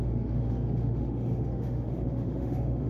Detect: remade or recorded remade